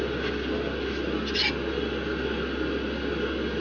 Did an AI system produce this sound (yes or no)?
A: no